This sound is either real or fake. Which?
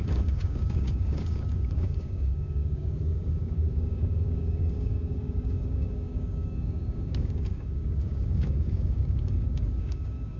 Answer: fake